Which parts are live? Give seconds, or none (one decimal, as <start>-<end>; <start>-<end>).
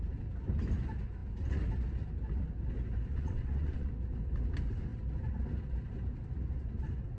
0.0-3.1; 3.9-7.2